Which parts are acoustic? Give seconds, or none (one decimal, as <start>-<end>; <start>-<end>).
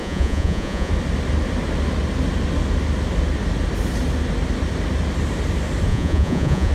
0.9-5.9